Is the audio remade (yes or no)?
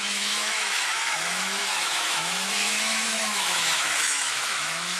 yes